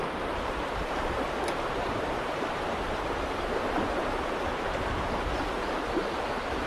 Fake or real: fake